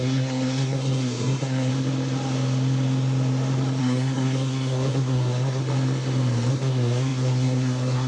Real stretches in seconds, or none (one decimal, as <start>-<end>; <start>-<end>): 1.7-3.8; 5.6-6.5